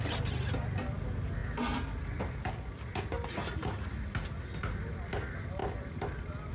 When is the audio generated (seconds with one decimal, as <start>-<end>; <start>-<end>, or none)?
none